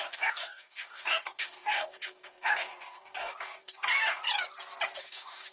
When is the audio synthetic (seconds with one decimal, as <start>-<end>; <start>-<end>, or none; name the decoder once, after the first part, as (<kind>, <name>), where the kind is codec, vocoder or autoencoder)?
0.0-4.2 (codec, DAC); 5.0-5.5